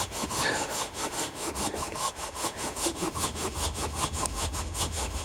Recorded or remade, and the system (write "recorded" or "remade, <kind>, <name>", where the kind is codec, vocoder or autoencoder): remade, autoencoder, DAC-VAE